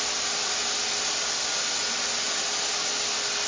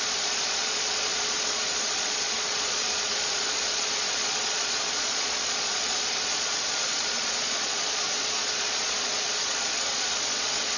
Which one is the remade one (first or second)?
second